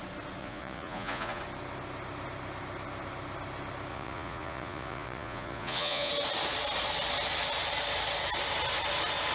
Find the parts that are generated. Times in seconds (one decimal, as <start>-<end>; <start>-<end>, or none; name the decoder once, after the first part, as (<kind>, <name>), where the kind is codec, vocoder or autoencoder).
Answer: 0.4-1.4 (vocoder, Vocos); 3.9-6.1